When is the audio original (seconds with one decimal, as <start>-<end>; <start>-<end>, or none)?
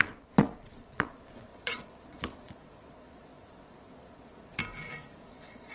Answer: 4.6-5.3